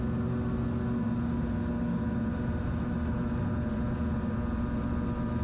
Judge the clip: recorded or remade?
recorded